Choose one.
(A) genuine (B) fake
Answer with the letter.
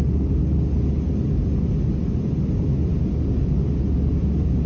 A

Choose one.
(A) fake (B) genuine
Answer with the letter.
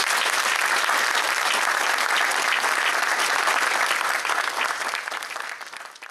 B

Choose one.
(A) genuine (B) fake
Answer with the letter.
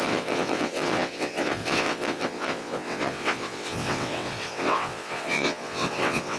B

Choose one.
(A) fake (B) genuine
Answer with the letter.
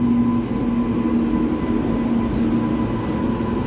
B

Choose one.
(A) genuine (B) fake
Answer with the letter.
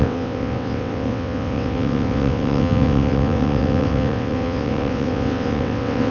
B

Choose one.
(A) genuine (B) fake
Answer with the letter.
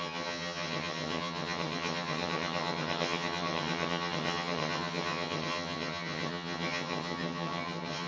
B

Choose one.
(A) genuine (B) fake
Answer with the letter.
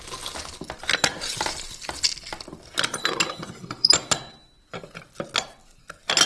A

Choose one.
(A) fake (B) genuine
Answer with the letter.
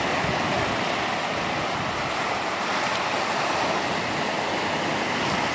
B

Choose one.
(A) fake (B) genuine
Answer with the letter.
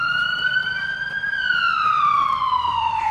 A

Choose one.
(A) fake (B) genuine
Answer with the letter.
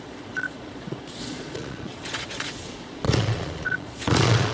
A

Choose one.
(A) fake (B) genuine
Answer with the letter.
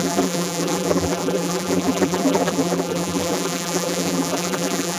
A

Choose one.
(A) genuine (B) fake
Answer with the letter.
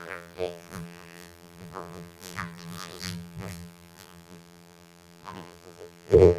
B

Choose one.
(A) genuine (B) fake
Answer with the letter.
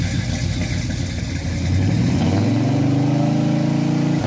A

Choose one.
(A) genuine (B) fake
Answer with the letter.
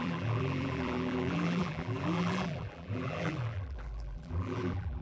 B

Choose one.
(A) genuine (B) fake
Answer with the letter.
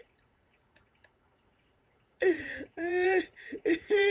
B